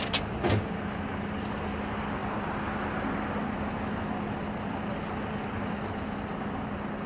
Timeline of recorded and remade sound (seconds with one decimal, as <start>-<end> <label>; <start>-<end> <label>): 0.0-7.1 recorded